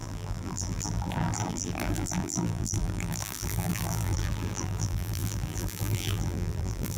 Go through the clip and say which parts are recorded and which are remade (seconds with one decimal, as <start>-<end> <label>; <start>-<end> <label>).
0.0-7.0 remade